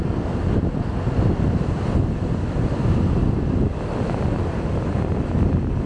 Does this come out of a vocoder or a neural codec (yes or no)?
no